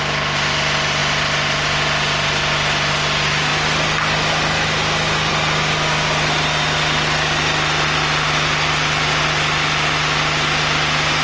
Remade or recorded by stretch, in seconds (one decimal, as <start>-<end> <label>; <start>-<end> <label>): 0.0-11.2 recorded